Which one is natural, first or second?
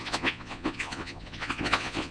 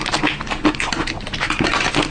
second